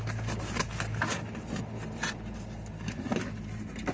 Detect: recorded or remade recorded